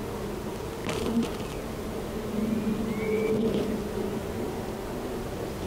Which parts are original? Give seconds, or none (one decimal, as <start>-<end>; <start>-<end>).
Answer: 0.0-0.8; 2.1-4.2; 4.7-5.7

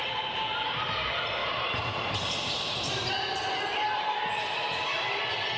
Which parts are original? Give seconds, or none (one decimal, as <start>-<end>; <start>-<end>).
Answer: 0.0-1.4; 3.1-4.9

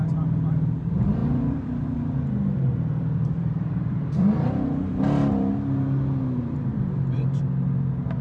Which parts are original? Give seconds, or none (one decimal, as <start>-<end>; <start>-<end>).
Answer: 0.0-1.2; 4.8-6.7; 7.4-8.2